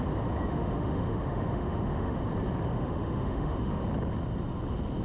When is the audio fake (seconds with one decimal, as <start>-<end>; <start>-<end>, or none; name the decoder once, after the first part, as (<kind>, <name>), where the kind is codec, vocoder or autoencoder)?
0.5-2.3 (autoencoder, DAC-VAE); 2.7-3.8